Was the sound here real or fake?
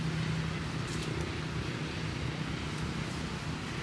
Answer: real